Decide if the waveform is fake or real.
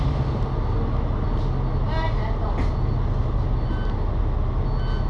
real